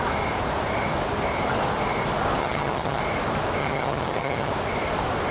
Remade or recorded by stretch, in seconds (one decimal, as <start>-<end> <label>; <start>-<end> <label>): 0.0-2.4 recorded; 2.4-3.0 remade; 3.0-3.6 recorded; 3.6-4.5 remade; 4.5-5.3 recorded